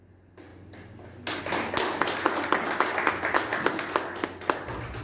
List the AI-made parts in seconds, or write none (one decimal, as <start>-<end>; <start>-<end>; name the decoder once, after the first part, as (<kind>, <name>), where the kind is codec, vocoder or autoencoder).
none

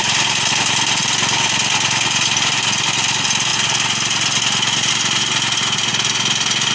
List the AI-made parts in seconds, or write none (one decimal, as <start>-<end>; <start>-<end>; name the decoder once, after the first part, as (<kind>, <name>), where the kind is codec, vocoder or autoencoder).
none

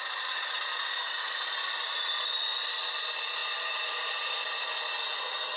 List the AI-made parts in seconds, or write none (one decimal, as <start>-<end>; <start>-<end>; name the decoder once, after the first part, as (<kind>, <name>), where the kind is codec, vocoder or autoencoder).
none

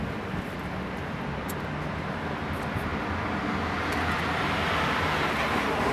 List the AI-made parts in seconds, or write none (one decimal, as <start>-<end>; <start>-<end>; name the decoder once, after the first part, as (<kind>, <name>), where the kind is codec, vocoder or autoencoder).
none

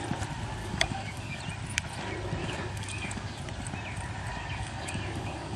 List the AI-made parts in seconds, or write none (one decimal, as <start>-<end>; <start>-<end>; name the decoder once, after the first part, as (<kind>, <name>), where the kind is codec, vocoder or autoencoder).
0.6-1.4 (codec, DAC); 2.4-3.4; 4.3-5.6

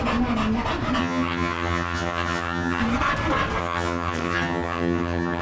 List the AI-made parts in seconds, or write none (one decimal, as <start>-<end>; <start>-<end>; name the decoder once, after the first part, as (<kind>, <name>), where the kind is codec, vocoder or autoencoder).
1.0-2.8 (vocoder, HiFi-GAN); 3.6-5.4

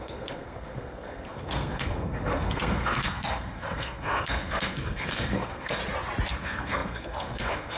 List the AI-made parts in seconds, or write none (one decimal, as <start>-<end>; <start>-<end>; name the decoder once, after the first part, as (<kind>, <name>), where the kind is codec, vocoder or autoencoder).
0.0-5.8 (codec, SNAC); 6.3-7.8